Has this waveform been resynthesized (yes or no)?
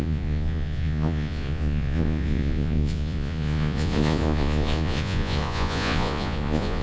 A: yes